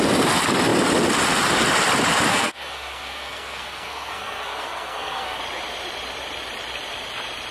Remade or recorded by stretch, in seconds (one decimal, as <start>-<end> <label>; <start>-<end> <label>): 0.0-2.3 recorded; 2.3-5.4 remade; 5.4-7.5 recorded